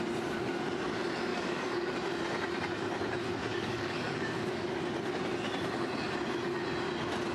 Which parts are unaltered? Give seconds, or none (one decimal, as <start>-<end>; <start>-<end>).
0.0-1.3; 1.9-3.5; 4.8-7.3